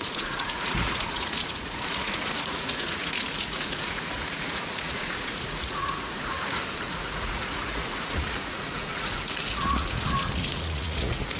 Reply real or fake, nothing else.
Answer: fake